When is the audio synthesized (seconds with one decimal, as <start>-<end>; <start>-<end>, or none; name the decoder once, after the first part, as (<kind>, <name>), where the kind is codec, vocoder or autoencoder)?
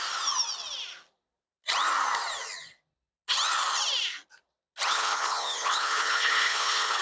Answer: 4.9-7.0 (codec, HILCodec)